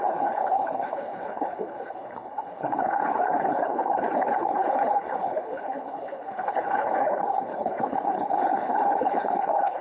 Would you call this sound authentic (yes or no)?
no